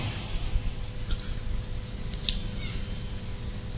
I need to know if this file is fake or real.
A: real